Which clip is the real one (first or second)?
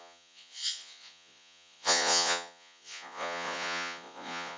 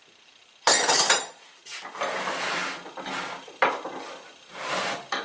second